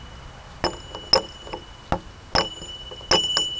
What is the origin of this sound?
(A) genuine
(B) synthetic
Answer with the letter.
A